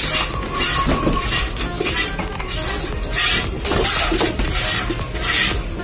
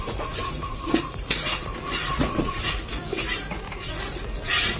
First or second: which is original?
first